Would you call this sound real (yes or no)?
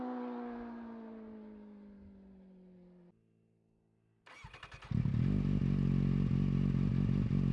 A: yes